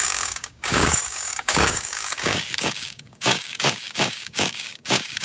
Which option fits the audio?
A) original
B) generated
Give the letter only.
B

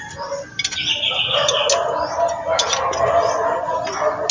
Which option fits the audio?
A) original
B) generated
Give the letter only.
A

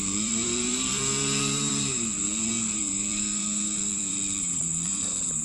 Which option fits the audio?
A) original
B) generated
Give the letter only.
B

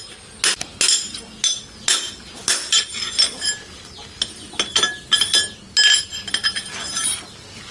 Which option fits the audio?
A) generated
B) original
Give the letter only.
B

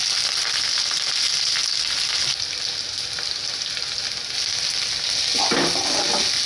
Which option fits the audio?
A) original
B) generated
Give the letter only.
A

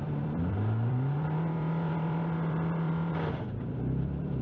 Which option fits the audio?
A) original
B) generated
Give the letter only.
B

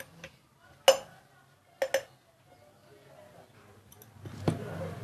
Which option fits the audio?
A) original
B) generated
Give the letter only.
A